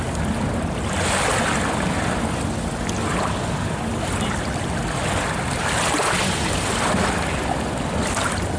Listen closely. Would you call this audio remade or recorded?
recorded